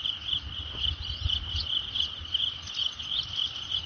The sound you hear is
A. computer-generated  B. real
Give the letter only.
B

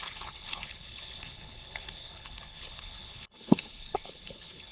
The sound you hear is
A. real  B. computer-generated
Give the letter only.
B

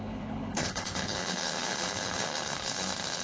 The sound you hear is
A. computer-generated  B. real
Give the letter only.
A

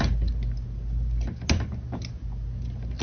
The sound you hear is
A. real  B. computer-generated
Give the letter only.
A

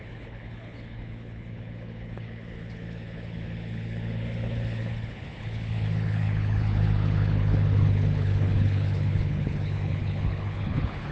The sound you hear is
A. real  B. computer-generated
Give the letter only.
B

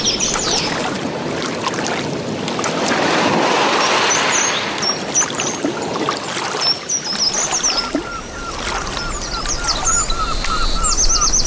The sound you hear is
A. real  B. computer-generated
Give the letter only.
A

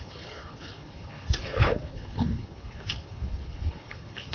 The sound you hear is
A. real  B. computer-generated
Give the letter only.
B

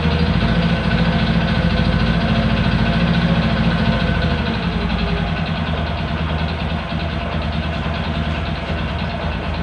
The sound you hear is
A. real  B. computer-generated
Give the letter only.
A